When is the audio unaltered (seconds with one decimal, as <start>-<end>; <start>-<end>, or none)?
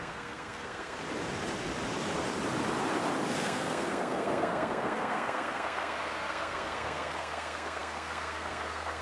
1.0-3.3